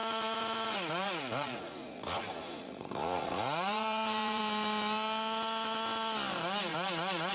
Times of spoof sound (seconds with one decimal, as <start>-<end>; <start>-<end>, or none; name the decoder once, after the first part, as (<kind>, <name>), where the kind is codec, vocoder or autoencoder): 0.0-4.4 (vocoder, Vocos); 6.7-7.3